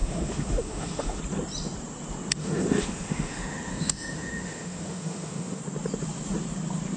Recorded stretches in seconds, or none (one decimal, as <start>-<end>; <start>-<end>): 1.2-2.4; 5.6-7.0